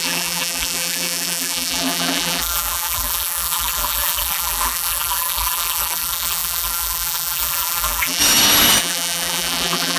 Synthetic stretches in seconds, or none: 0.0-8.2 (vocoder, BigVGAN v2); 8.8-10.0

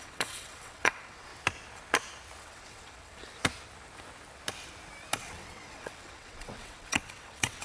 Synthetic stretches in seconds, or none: 0.0-1.3 (vocoder, WaveNeXt); 2.4-3.2; 5.2-7.6